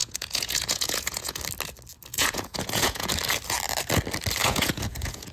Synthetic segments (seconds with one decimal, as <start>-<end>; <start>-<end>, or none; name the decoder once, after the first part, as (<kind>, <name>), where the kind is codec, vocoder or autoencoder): 0.0-1.4 (vocoder, Vocos); 2.1-3.1; 4.4-5.3